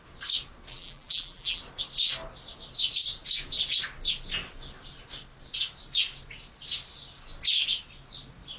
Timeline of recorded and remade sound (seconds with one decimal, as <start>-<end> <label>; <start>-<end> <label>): 0.0-0.7 recorded; 0.7-1.6 remade; 1.6-8.6 recorded